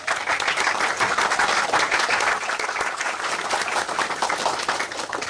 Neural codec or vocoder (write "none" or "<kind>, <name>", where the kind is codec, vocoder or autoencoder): none